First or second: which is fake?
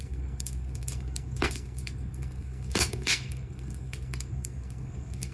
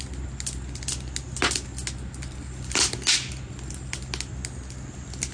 first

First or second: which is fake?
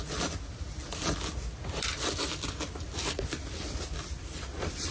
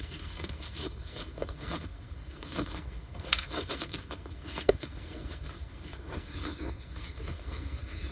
second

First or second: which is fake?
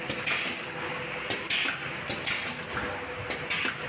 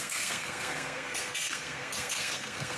second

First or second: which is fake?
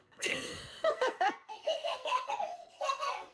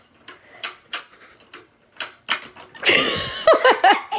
first